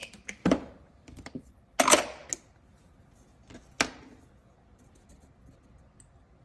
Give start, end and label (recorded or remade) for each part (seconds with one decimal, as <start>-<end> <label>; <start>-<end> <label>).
0.0-1.5 remade; 1.5-6.4 recorded